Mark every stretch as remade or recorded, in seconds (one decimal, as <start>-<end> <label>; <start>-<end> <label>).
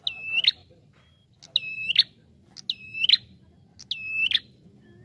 0.0-5.0 recorded